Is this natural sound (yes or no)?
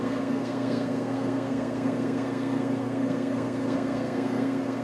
no